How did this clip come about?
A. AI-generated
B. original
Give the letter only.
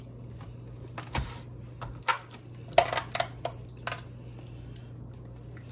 B